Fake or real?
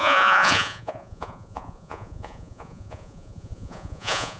fake